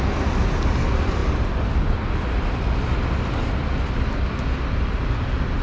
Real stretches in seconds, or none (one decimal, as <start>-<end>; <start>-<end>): 0.0-5.6